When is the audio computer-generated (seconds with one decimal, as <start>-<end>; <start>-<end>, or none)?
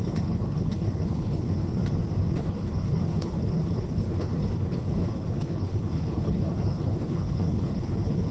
0.0-1.8; 2.3-8.3